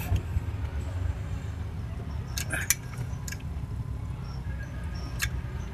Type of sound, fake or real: real